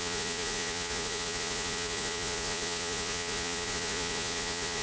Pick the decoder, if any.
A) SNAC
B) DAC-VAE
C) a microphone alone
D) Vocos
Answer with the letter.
D